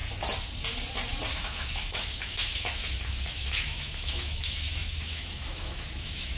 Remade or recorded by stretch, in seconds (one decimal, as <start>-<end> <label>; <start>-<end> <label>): 0.0-1.3 recorded; 1.3-6.4 remade